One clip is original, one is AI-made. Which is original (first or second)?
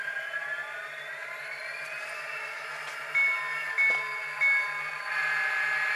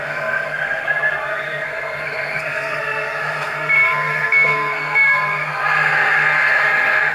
first